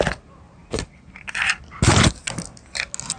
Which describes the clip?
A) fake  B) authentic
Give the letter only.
B